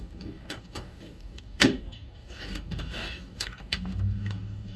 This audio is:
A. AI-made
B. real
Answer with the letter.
A